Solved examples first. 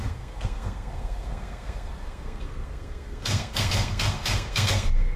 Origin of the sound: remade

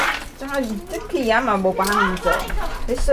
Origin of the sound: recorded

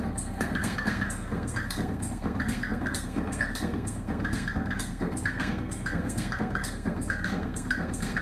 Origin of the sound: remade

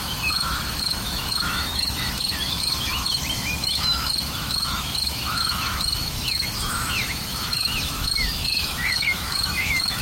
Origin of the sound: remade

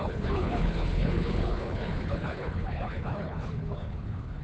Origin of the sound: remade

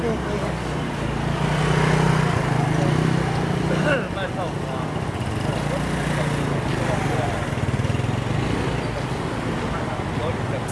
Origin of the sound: recorded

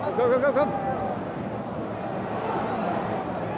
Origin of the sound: recorded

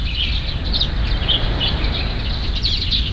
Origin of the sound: recorded